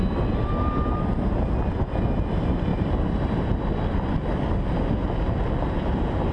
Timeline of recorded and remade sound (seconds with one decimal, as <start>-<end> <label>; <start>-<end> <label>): 0.0-2.7 recorded; 2.7-3.5 remade; 3.5-6.3 recorded